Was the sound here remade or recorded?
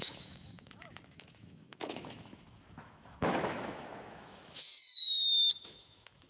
remade